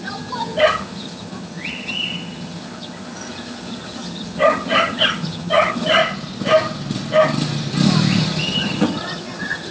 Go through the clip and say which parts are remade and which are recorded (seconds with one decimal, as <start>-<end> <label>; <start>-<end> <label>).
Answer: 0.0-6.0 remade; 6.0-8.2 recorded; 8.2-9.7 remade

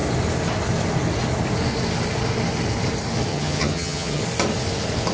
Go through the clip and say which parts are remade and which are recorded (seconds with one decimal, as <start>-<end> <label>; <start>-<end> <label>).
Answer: 0.0-3.3 recorded; 3.3-4.2 remade; 4.2-5.1 recorded

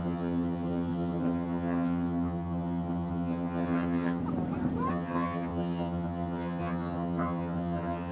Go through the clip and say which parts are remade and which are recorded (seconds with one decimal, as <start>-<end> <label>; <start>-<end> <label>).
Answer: 0.0-4.2 remade; 4.2-4.9 recorded; 4.9-8.1 remade